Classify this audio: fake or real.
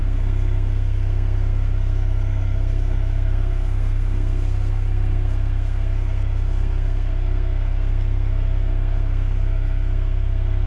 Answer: fake